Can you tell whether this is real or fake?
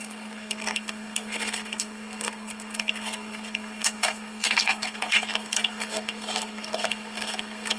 fake